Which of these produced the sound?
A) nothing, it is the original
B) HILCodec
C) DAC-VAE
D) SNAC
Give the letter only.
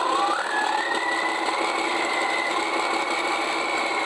A